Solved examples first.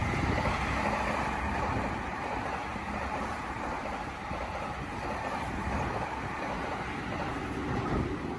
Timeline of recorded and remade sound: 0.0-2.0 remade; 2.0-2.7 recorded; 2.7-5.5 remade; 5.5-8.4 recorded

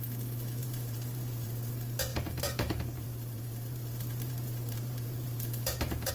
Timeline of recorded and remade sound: 0.0-0.6 recorded; 0.6-1.7 remade; 1.7-2.1 recorded; 2.1-6.1 remade

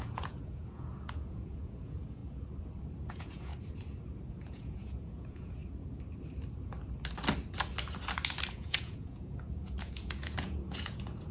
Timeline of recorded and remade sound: 0.0-2.2 remade; 2.2-3.1 recorded; 3.1-3.5 remade; 3.5-4.3 recorded; 4.3-5.6 remade; 5.6-8.5 recorded; 8.5-11.3 remade

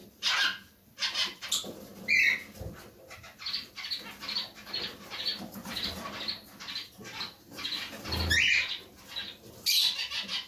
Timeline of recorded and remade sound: 0.0-0.9 remade; 0.9-10.5 recorded